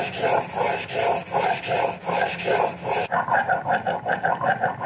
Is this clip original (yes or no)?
yes